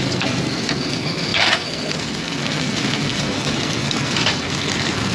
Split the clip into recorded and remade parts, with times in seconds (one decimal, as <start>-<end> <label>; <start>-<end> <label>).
0.0-5.1 remade